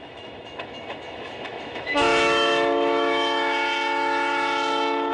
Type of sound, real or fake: fake